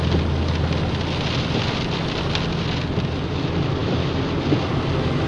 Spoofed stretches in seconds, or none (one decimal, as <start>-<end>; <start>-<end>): none